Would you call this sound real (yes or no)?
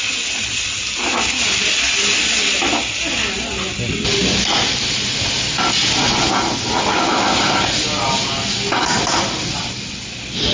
yes